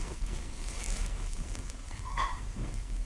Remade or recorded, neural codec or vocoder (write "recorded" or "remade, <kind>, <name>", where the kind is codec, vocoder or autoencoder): remade, codec, SNAC